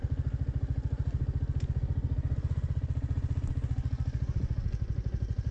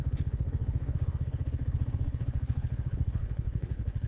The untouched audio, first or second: first